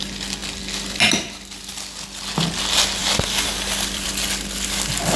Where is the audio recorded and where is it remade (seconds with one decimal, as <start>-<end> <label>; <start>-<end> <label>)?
0.0-3.0 recorded; 3.0-4.2 remade; 4.2-5.2 recorded